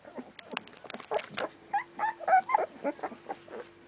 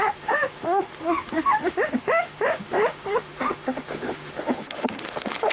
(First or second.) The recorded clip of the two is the first